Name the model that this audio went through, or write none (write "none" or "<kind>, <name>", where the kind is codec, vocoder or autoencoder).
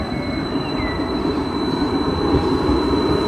none